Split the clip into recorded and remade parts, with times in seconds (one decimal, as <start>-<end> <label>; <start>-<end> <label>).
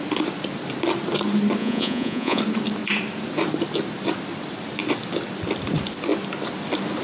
0.0-1.6 recorded; 1.6-2.4 remade; 2.4-7.0 recorded